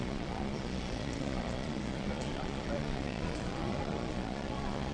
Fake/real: fake